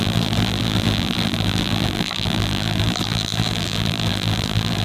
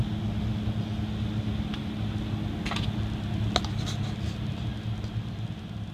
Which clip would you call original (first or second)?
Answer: second